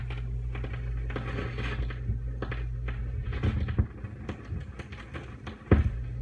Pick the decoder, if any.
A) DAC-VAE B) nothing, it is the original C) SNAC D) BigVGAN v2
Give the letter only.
B